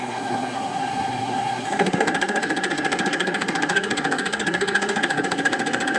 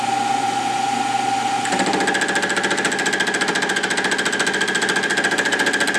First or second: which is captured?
second